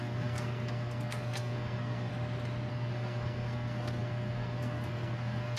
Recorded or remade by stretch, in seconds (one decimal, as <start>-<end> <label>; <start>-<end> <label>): 0.0-2.1 remade; 2.1-2.7 recorded; 2.7-5.6 remade